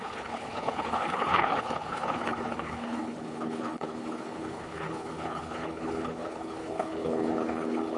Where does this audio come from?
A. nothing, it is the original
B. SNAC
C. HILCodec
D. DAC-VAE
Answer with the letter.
C